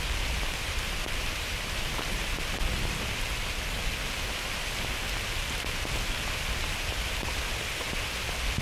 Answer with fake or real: real